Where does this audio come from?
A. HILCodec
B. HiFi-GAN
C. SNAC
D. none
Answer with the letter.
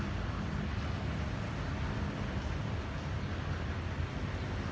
D